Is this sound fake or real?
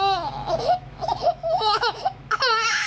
fake